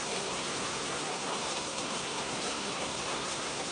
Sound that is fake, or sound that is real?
fake